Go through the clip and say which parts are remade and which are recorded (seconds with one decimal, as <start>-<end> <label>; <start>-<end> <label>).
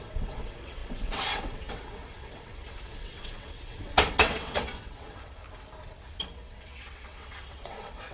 0.0-5.4 remade; 5.4-6.1 recorded; 6.1-8.1 remade